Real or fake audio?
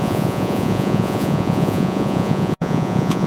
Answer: fake